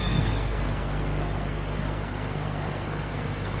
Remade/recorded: remade